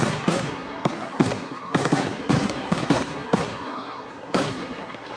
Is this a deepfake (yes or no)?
yes